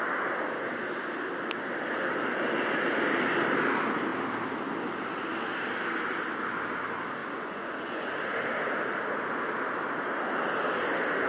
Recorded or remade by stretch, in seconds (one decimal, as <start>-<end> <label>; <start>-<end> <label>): 0.0-7.2 recorded; 7.2-8.1 remade; 8.1-11.3 recorded